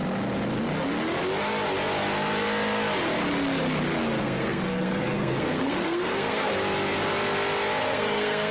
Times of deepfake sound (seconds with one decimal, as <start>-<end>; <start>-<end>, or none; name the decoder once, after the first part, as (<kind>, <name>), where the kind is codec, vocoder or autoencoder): 4.2-6.5 (codec, SNAC); 7.8-8.5

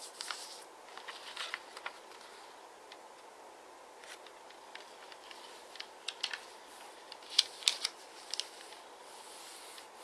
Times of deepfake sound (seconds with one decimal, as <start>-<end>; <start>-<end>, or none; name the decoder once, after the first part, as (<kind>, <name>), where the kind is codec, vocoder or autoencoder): none

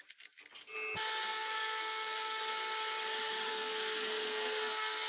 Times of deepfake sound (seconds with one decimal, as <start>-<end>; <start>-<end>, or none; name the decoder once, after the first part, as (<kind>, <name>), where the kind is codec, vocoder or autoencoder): 1.3-2.5 (codec, SNAC); 3.5-5.1

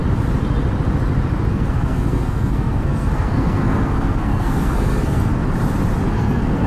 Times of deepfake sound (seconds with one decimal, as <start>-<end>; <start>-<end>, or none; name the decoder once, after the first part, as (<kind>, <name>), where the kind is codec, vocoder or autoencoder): 1.5-5.3 (codec, SNAC); 6.1-6.7

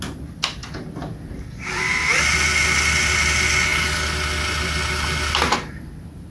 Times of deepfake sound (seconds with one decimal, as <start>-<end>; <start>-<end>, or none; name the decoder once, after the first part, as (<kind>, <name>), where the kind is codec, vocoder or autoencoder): none